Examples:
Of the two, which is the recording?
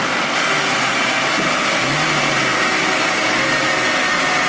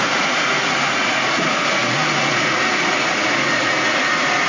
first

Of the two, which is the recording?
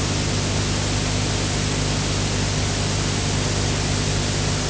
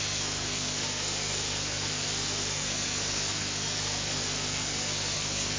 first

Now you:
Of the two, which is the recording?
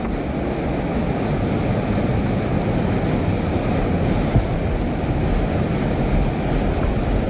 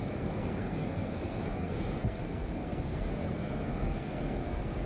first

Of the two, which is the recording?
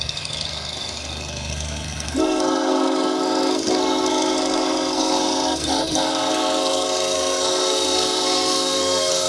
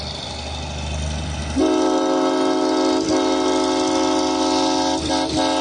second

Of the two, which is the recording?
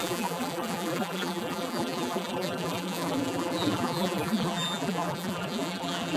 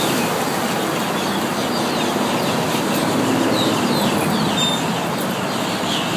second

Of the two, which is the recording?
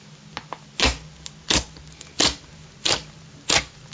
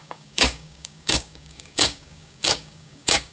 first